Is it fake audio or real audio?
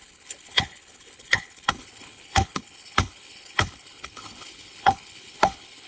fake